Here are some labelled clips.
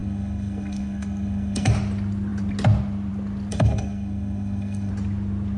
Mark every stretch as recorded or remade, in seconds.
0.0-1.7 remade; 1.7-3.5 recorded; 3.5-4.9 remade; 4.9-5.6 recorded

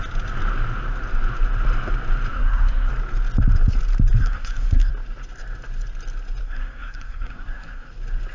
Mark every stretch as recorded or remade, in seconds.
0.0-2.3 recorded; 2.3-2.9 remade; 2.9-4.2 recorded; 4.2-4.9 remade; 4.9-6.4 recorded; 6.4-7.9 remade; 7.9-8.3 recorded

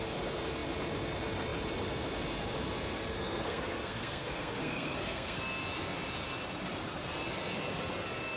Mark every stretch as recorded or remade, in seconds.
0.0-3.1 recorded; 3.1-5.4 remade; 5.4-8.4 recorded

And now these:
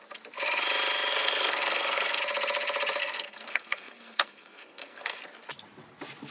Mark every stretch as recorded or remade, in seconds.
0.0-1.1 recorded; 1.1-2.2 remade; 2.2-3.0 recorded; 3.0-5.2 remade; 5.2-6.3 recorded